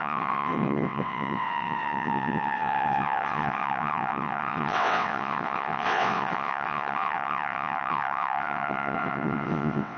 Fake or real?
fake